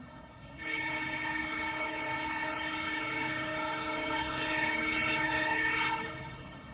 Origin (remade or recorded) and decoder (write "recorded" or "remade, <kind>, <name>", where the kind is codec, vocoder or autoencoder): remade, codec, HILCodec